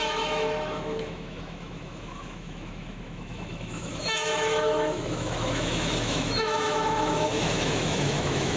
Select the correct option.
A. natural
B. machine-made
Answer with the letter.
B